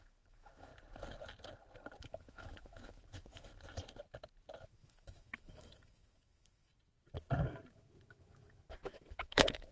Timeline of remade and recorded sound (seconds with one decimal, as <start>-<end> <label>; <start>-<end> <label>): 0.0-0.7 remade; 0.7-2.0 recorded; 2.0-3.5 remade; 3.5-4.6 recorded; 4.6-6.7 remade; 6.7-7.7 recorded; 7.7-9.7 remade